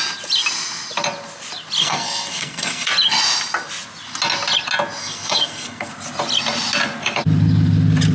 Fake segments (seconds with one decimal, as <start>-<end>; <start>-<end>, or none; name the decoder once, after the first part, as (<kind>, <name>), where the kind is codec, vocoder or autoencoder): 1.8-2.9 (codec, SNAC); 5.0-5.9

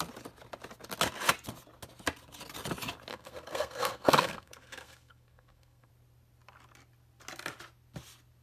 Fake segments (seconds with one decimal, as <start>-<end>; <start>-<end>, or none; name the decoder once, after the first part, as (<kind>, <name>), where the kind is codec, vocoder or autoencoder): 3.1-5.9 (codec, SNAC)

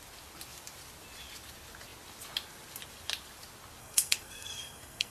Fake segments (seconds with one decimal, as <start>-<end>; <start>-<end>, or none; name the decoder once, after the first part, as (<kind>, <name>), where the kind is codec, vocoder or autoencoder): 3.8-5.1 (codec, SNAC)

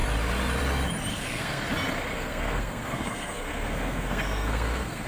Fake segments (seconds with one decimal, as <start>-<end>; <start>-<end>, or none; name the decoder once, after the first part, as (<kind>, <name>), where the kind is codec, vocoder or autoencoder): 1.1-1.6 (codec, SNAC); 2.1-5.1

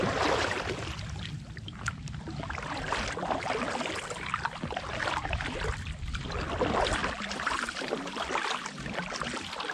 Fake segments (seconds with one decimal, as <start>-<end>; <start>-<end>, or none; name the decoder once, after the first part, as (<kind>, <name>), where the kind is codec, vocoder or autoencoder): none

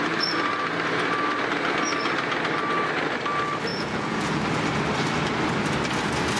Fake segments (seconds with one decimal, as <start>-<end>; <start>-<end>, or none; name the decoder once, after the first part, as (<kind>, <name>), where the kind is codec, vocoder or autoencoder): 3.7-4.4 (vocoder, Vocos)